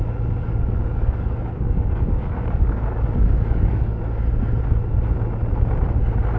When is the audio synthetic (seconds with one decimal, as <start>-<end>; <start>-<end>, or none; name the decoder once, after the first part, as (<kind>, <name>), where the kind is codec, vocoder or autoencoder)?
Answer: 0.4-4.0 (codec, DAC)